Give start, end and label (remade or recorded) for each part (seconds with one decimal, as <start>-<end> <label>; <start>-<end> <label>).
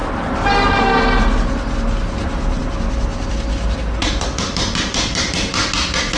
0.0-6.2 recorded